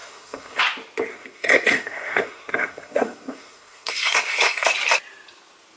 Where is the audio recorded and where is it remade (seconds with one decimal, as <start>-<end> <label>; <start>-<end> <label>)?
0.0-0.6 remade; 0.6-1.1 recorded; 1.1-4.6 remade; 4.6-5.8 recorded